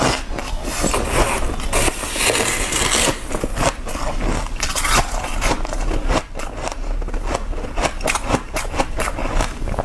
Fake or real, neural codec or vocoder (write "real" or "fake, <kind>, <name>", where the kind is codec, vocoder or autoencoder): real